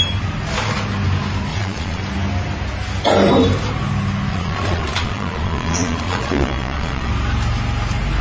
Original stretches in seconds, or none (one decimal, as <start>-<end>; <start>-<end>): 0.0-1.5; 2.0-4.3; 7.1-8.2

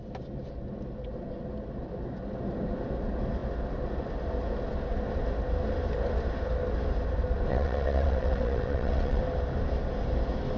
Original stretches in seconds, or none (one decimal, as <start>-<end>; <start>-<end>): 0.0-7.5; 9.2-10.6